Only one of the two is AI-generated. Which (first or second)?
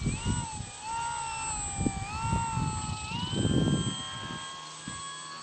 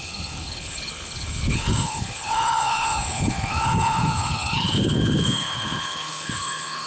second